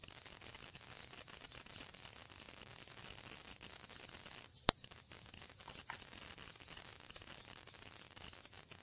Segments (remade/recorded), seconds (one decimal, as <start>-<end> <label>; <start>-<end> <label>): 0.0-2.7 recorded; 2.7-5.8 remade; 5.8-8.8 recorded